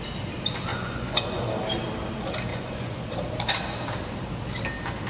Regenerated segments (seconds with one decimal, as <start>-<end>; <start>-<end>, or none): 0.7-1.4; 2.5-3.0